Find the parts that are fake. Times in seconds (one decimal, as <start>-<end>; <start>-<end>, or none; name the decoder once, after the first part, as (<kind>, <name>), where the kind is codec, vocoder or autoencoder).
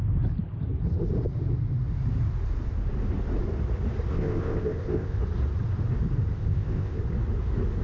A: 4.1-5.2 (codec, ZipCodec); 6.3-7.0